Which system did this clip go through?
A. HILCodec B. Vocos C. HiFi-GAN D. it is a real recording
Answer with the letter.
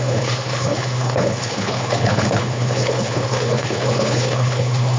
A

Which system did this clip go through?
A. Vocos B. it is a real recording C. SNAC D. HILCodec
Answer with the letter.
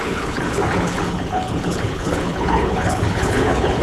D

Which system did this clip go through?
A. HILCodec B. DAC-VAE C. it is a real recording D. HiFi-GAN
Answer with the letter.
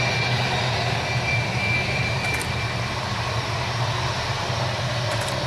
C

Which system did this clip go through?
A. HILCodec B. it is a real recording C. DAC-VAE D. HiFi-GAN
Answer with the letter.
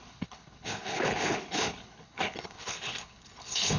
A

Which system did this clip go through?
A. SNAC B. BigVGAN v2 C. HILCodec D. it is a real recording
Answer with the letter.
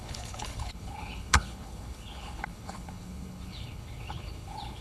C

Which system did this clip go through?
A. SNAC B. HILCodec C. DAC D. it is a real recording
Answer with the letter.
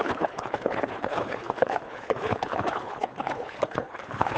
B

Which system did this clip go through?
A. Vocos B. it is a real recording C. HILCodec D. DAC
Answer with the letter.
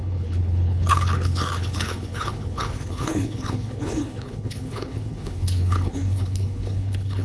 C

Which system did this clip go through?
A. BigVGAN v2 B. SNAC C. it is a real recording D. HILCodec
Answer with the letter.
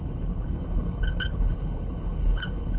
D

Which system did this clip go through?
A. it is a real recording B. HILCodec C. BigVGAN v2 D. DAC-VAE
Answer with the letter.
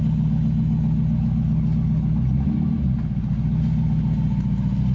A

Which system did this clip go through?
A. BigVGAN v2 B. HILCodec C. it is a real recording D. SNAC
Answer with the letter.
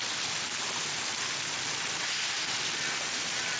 C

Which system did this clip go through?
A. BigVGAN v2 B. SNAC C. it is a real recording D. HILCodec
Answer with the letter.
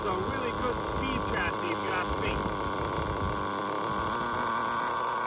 C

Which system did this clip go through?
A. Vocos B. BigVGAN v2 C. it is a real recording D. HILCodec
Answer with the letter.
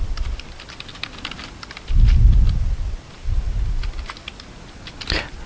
C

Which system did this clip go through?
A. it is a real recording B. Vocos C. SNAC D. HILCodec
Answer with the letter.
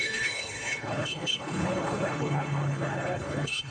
D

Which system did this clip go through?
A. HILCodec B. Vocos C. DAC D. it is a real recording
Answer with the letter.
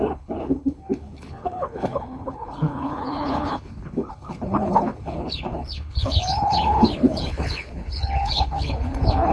A